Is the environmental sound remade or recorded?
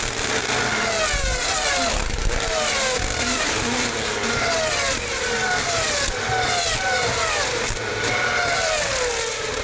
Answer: remade